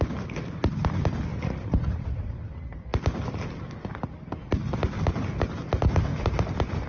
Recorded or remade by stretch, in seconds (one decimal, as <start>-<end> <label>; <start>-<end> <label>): 0.0-1.3 recorded; 1.3-2.2 remade; 2.2-6.9 recorded